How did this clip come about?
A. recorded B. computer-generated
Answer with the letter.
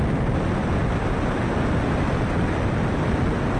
A